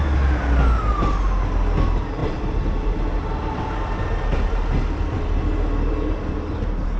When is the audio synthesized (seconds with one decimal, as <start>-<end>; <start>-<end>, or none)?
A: none